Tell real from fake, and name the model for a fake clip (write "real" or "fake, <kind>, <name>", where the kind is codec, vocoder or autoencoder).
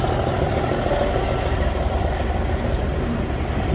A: real